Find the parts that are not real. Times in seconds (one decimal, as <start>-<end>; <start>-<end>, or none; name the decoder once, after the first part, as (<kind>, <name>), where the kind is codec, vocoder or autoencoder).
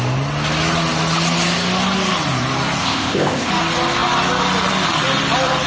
2.8-3.5 (codec, ZipCodec)